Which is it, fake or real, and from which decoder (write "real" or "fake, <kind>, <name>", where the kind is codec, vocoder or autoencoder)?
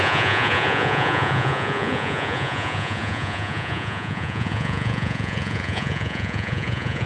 fake, vocoder, Vocos